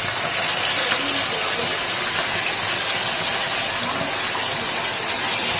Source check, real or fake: real